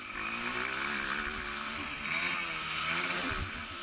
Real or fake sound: real